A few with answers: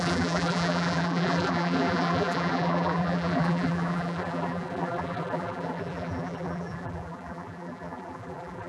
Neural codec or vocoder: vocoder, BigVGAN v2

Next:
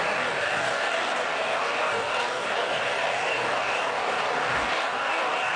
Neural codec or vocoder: codec, DAC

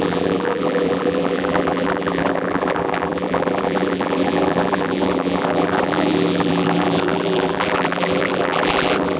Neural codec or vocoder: vocoder, BigVGAN v2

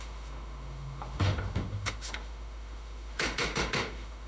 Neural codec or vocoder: autoencoder, DAC-VAE